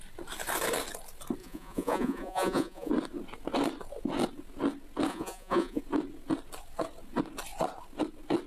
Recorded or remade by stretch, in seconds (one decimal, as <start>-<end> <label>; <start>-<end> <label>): 0.0-1.4 recorded; 1.4-2.9 remade; 2.9-5.1 recorded; 5.1-5.8 remade; 5.8-8.5 recorded